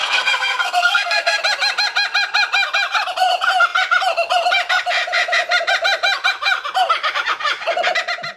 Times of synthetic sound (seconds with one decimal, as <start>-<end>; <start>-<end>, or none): 0.0-1.4